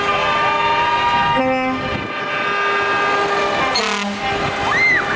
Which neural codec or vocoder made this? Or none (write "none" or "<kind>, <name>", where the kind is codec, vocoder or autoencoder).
none